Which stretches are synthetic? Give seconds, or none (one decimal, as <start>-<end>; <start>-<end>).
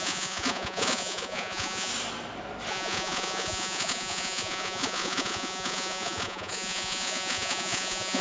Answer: 0.0-1.9; 2.7-8.2